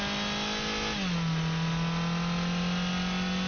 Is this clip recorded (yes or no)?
yes